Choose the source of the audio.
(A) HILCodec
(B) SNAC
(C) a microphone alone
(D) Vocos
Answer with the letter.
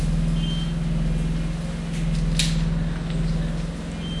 C